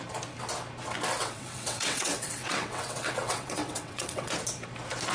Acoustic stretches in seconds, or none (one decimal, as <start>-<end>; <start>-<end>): 0.0-1.2; 4.3-5.1